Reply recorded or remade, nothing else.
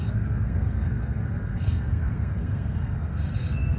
remade